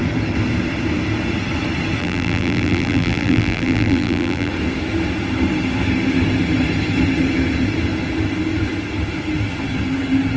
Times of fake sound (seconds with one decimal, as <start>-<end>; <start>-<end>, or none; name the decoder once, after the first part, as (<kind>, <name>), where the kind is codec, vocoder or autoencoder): 2.0-4.5 (vocoder, BigVGAN v2)